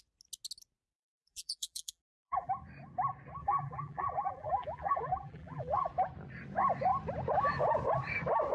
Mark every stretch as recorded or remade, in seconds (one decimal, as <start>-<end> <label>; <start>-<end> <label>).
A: 0.0-0.9 recorded; 0.9-2.5 remade; 2.5-3.4 recorded; 3.4-5.9 remade; 5.9-8.5 recorded